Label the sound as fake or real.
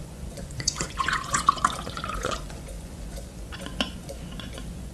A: fake